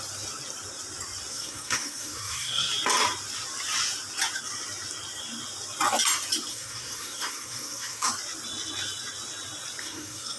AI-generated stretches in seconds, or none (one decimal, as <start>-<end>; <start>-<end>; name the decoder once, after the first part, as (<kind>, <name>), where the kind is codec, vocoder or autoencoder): 1.3-2.7 (codec, SNAC); 6.5-8.1; 9.8-10.4